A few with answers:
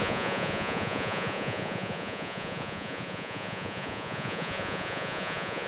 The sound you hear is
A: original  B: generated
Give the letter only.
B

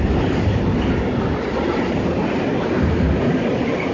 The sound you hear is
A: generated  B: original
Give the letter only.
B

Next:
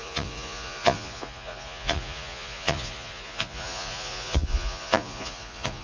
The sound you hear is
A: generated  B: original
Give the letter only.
A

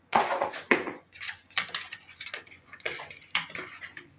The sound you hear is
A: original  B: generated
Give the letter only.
B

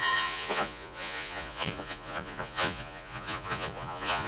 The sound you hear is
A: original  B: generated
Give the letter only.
B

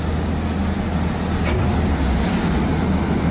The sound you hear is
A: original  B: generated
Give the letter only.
A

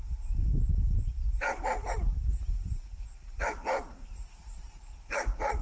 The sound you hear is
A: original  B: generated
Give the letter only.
A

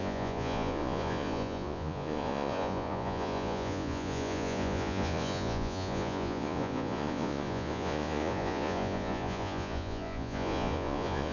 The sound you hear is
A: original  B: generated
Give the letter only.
B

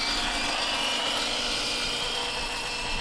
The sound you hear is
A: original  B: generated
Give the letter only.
A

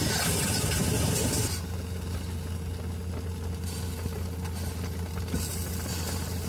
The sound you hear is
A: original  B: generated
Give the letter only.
A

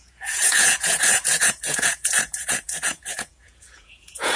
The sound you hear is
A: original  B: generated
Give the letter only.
B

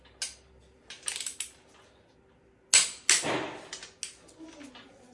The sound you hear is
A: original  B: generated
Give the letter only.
A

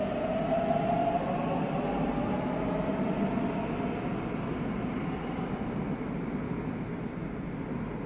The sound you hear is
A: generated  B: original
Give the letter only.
B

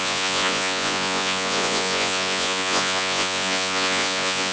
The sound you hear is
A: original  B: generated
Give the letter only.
B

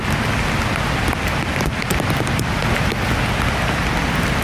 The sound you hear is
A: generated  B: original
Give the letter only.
B